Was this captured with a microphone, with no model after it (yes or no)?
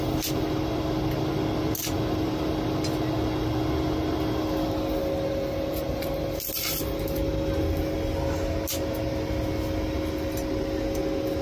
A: yes